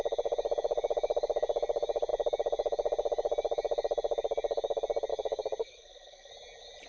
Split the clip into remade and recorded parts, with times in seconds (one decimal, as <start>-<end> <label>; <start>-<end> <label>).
0.0-5.6 recorded; 5.6-6.3 remade; 6.3-6.9 recorded